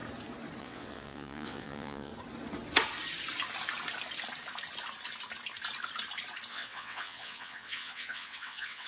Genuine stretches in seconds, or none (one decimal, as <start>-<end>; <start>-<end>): 0.0-0.6; 2.1-6.5